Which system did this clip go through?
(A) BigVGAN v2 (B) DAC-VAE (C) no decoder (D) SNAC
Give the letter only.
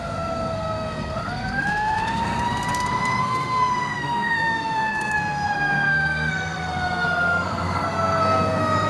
D